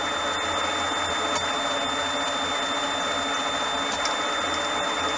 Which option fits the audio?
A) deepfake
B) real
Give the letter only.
B